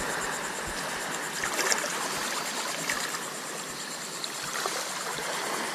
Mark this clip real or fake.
real